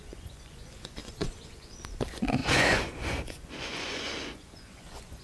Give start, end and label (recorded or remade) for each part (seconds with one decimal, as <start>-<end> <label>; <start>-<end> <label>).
0.0-5.2 remade

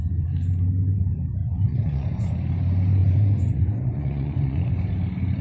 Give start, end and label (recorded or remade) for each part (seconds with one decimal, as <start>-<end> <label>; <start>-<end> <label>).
0.0-1.4 recorded; 1.4-2.3 remade; 2.3-3.0 recorded; 3.0-4.7 remade; 4.7-5.4 recorded